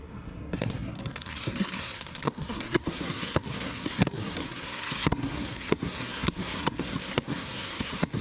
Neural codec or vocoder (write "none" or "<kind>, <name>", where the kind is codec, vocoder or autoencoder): codec, SNAC